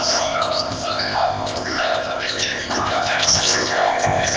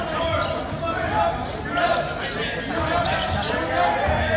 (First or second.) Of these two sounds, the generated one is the first